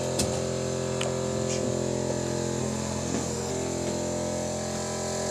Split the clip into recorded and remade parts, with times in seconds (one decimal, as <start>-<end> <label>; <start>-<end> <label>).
0.0-2.6 recorded; 2.6-3.5 remade; 3.5-5.3 recorded